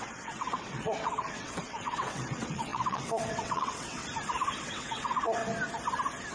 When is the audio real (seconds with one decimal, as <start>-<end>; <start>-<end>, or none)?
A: 4.0-4.6; 5.4-6.3